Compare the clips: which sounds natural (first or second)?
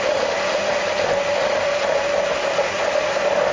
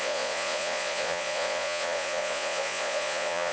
first